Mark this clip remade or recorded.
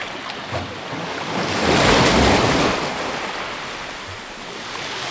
recorded